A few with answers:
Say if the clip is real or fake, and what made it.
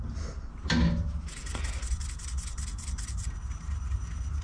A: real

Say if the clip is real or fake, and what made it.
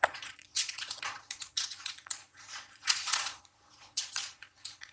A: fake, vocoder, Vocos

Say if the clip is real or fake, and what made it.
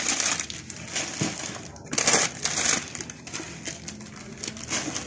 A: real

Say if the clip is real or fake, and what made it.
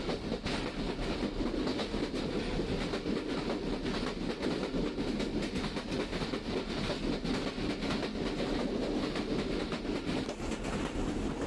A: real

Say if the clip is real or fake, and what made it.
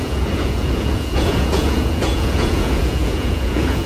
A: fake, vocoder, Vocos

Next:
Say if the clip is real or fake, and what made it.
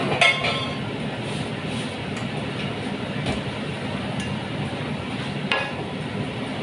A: real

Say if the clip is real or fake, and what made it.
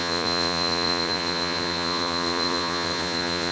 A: fake, vocoder, Vocos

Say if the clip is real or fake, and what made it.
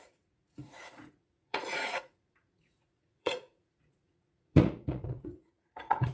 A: fake, vocoder, Vocos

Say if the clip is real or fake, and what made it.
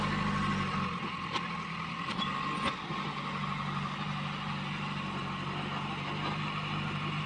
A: real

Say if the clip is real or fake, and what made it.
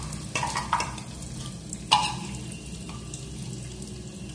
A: real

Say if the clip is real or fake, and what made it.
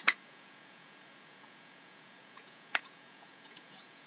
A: fake, vocoder, Vocos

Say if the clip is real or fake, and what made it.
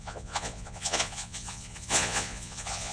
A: fake, vocoder, Vocos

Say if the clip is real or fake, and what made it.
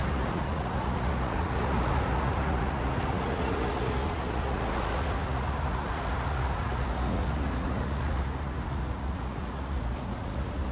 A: fake, vocoder, Vocos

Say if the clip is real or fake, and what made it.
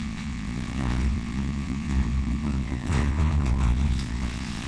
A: fake, vocoder, Vocos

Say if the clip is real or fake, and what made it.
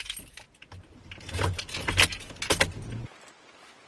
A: real